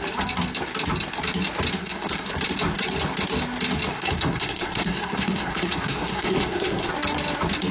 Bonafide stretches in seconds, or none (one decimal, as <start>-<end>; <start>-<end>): 0.0-1.8; 2.3-3.9; 6.9-7.7

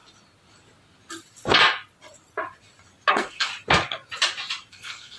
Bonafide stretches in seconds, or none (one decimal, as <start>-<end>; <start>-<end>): 0.0-3.1; 3.5-4.7